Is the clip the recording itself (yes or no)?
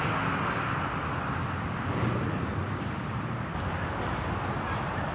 yes